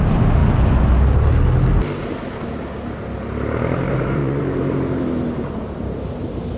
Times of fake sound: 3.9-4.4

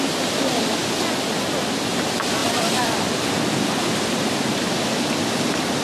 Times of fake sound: 2.4-5.0

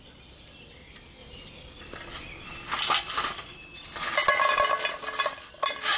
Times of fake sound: 0.0-3.7; 4.3-6.0

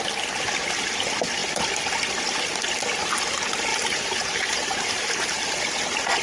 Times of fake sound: 3.7-5.7